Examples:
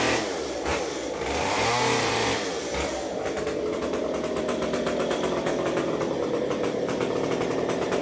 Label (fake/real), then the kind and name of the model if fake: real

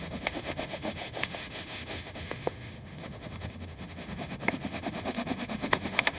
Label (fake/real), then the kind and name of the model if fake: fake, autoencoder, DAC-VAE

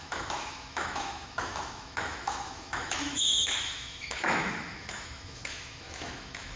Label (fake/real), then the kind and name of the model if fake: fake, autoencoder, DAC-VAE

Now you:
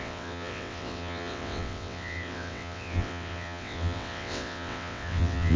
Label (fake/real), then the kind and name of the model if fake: fake, vocoder, WaveNeXt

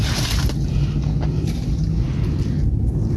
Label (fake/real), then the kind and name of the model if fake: fake, vocoder, BigVGAN v2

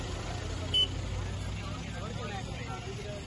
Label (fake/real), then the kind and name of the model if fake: real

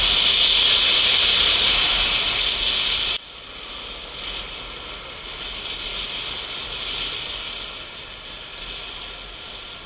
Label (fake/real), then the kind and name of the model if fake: real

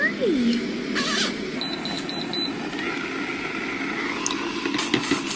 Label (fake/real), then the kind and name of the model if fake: real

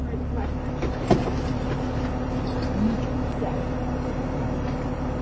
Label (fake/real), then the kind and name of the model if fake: real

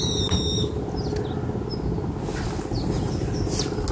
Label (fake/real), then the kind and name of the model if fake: real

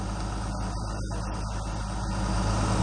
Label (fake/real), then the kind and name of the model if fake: real